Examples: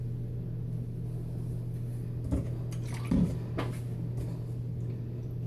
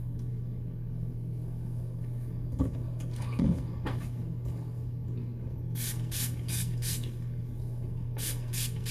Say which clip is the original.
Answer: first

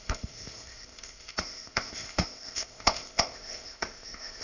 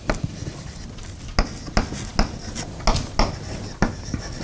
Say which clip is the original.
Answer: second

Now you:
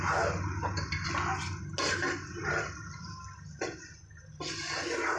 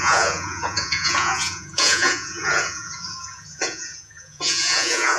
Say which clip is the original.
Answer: first